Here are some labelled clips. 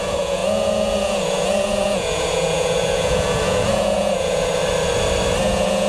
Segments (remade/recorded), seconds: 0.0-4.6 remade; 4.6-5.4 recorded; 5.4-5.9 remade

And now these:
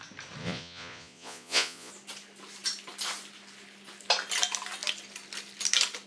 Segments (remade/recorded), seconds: 0.0-0.4 recorded; 0.4-1.9 remade; 1.9-6.1 recorded

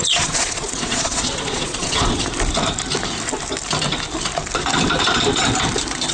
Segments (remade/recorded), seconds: 0.0-2.3 remade; 2.3-6.1 recorded

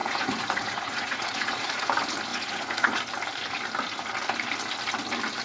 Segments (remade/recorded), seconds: 0.0-1.8 remade; 1.8-2.3 recorded; 2.3-3.0 remade; 3.0-5.4 recorded

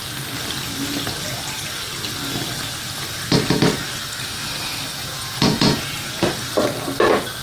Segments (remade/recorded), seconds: 0.0-5.0 recorded; 5.0-6.2 remade; 6.2-7.4 recorded

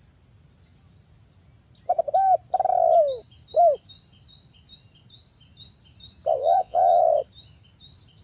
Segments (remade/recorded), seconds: 0.0-6.4 recorded; 6.4-7.0 remade; 7.0-8.2 recorded